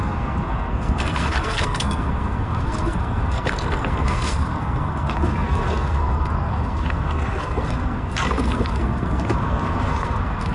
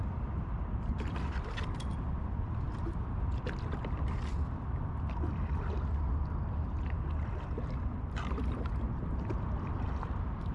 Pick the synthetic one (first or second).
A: first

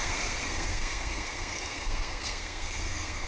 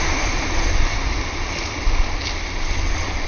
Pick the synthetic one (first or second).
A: first